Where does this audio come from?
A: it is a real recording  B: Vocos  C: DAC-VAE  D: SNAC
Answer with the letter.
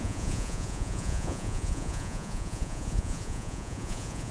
B